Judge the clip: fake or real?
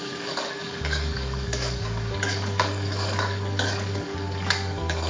fake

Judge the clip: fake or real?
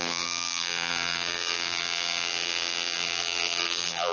fake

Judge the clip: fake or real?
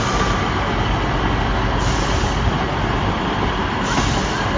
real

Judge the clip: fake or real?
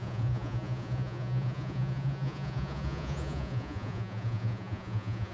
fake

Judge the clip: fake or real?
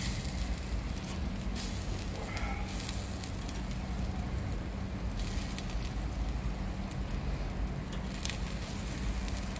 real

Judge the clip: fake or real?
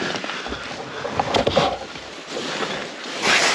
real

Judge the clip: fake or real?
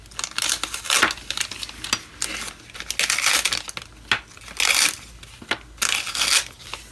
real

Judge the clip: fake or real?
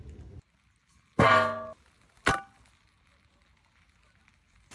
real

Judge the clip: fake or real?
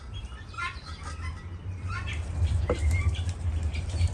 fake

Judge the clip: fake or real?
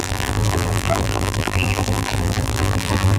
fake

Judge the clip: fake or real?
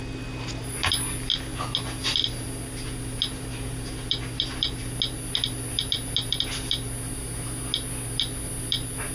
real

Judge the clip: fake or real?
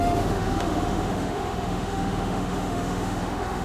fake